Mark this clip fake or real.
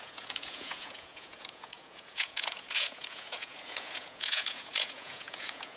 fake